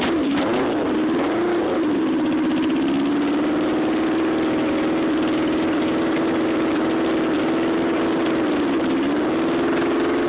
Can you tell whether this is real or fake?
real